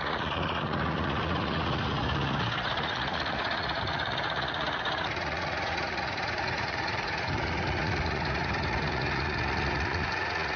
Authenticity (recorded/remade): remade